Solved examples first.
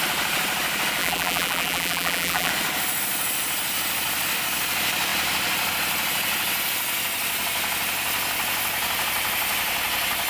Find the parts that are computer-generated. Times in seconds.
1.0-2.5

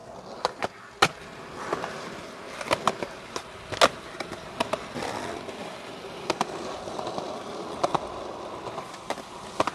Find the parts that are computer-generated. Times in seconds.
5.6-7.7